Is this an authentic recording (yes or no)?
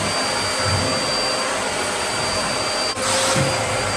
yes